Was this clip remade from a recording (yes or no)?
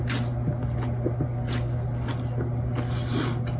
no